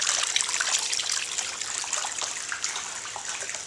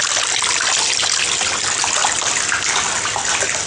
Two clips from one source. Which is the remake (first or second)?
first